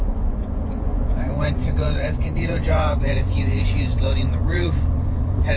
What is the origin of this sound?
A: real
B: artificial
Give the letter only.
B